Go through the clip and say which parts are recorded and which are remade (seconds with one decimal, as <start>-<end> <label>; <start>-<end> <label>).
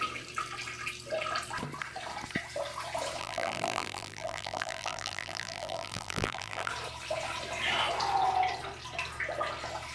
0.0-3.2 recorded; 3.2-6.7 remade; 6.7-9.9 recorded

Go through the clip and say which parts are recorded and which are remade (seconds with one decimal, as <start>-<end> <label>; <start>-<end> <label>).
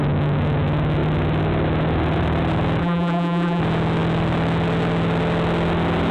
0.0-2.8 recorded; 2.8-3.6 remade; 3.6-6.1 recorded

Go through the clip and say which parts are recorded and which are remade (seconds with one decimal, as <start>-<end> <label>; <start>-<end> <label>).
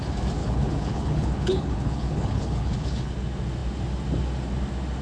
0.0-0.4 recorded; 0.4-3.1 remade; 3.1-5.0 recorded